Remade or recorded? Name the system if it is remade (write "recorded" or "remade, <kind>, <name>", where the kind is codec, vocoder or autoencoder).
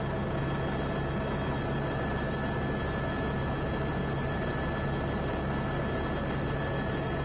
recorded